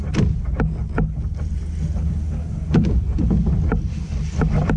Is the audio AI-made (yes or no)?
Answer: no